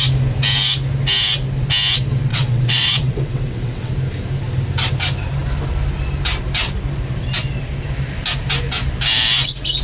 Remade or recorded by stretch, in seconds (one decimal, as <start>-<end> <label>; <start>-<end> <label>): 0.0-2.3 recorded; 2.3-3.9 remade; 3.9-9.8 recorded